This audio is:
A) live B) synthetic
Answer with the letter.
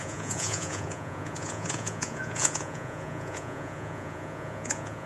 B